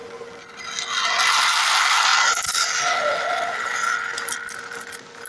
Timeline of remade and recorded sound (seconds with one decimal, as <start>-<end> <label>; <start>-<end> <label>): 0.0-1.3 recorded; 1.3-2.1 remade; 2.1-5.3 recorded